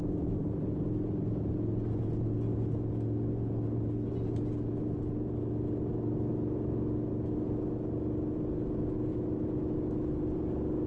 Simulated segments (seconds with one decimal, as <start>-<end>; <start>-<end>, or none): 6.3-7.1; 9.1-10.2